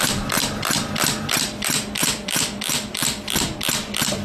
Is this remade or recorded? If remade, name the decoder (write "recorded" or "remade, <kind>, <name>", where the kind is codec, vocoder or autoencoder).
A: remade, vocoder, BigVGAN v2